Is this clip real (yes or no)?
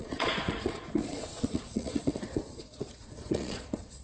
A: no